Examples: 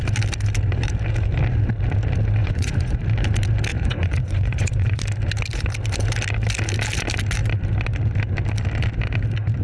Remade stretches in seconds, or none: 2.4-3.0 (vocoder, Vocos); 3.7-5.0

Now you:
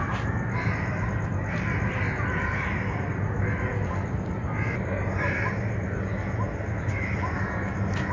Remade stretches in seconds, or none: none